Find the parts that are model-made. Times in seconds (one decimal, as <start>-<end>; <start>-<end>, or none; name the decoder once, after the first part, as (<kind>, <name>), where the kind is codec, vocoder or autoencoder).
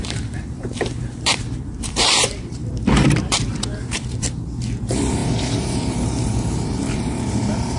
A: 0.0-7.8 (vocoder, BigVGAN v2)